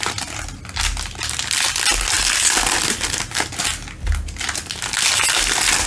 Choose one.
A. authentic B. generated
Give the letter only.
A